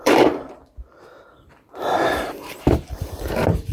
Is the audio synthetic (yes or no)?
yes